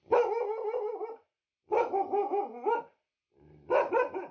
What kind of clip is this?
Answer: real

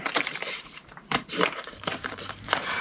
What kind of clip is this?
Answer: fake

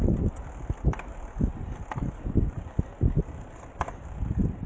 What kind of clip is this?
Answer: real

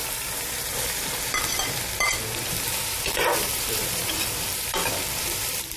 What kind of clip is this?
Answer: fake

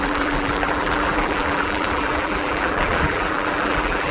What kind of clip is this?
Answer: fake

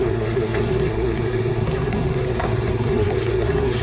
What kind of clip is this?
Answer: fake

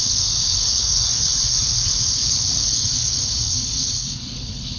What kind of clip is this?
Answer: fake